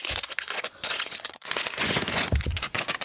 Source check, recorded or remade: remade